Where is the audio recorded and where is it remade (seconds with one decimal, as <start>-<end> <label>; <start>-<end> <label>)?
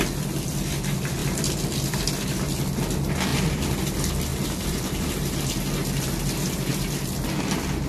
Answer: 0.0-1.2 recorded; 1.2-2.0 remade; 2.0-3.3 recorded; 3.3-3.8 remade; 3.8-4.3 recorded; 4.3-5.1 remade; 5.1-7.9 recorded